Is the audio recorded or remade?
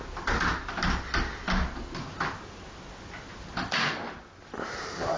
recorded